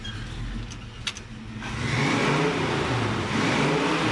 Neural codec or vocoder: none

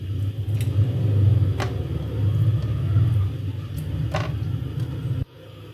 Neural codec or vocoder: none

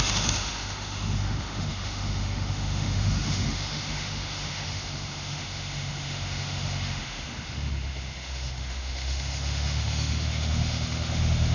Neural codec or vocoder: autoencoder, DAC-VAE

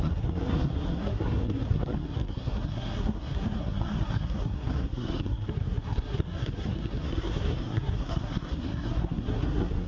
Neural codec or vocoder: codec, SNAC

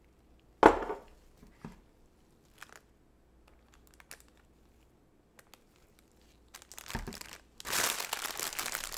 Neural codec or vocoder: none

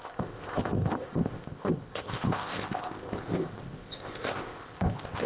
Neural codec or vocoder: codec, ZipCodec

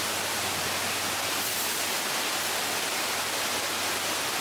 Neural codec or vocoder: none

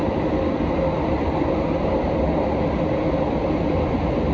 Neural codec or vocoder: none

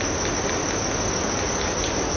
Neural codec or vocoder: none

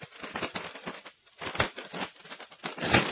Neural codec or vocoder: none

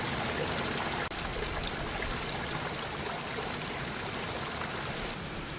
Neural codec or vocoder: none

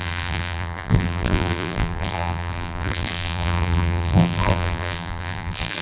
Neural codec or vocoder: vocoder, BigVGAN v2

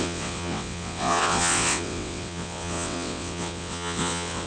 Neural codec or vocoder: vocoder, WaveNeXt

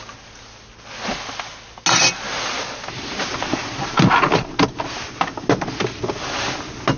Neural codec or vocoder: none